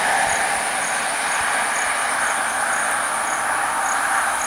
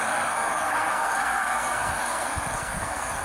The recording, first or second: first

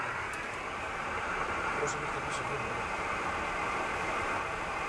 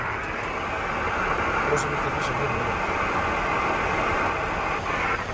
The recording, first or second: second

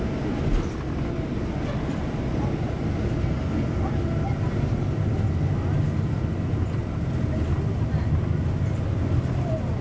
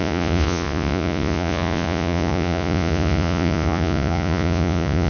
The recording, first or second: first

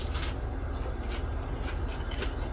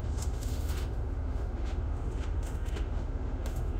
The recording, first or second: first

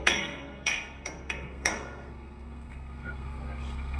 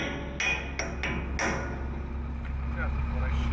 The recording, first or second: second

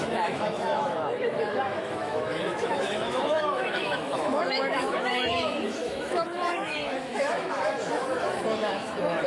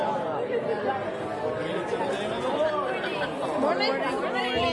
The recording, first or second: second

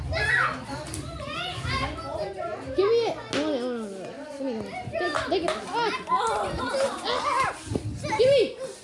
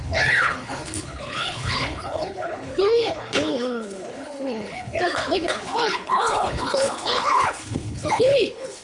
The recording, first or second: first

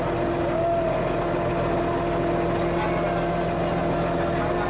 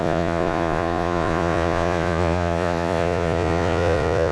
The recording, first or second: first